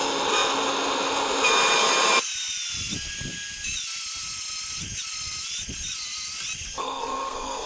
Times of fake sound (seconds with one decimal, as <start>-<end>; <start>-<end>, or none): 6.8-7.7